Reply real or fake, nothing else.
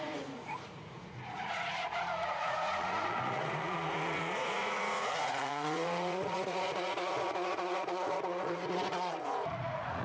fake